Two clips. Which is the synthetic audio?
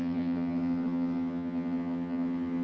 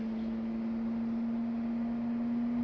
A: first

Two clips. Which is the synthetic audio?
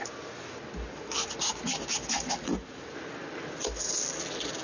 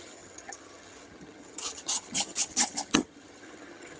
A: second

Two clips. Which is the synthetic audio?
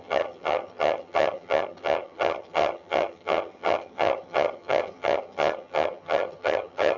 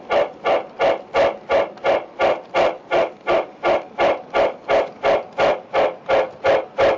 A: first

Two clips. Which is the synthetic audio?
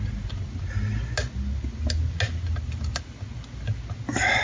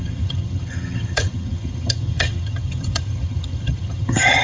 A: second